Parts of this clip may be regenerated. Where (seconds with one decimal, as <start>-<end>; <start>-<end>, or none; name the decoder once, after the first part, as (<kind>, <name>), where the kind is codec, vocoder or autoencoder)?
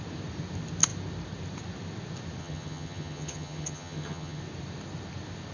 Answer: 2.4-4.4 (vocoder, HiFi-GAN)